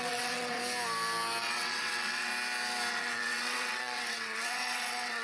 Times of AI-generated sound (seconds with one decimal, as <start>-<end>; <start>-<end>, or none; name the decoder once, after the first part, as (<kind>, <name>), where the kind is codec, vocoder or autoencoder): 0.0-0.6 (vocoder, WaveNeXt); 1.4-2.3; 2.9-5.2